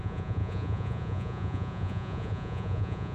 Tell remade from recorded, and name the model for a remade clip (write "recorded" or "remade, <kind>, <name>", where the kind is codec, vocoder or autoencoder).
remade, vocoder, Vocos